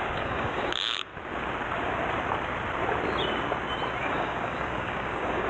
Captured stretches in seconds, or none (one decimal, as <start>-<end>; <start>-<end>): 1.1-4.0